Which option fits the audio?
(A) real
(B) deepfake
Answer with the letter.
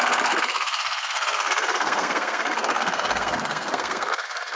B